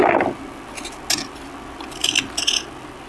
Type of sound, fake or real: real